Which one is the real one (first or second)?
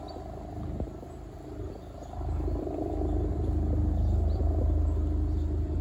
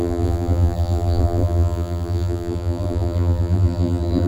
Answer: first